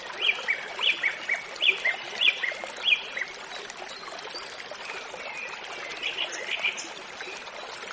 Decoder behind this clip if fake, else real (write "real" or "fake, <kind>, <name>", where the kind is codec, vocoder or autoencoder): fake, vocoder, BigVGAN v2